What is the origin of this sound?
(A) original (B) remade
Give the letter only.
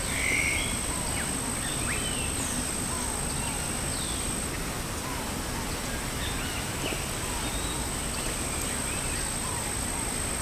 A